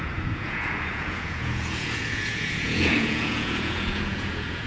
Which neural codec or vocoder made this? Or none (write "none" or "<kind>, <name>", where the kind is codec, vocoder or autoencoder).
vocoder, Vocos